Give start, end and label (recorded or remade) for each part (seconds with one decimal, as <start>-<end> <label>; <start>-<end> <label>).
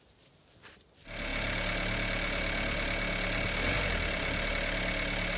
0.0-5.4 recorded